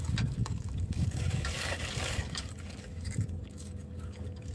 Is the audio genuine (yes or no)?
no